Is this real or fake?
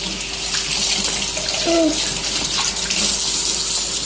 real